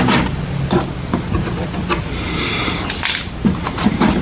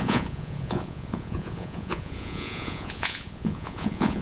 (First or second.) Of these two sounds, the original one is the first